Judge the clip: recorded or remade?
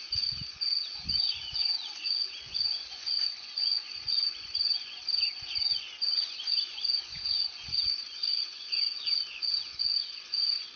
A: remade